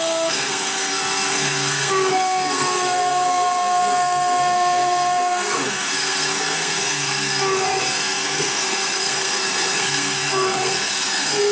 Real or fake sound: fake